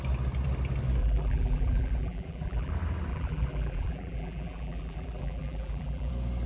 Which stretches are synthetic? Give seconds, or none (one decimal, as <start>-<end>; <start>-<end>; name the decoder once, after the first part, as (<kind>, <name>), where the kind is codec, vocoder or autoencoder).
1.0-2.7 (vocoder, BigVGAN v2); 3.1-6.1